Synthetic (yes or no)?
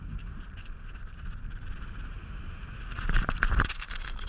yes